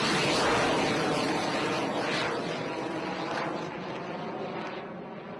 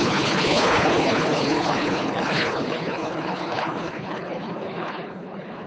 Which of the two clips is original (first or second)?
first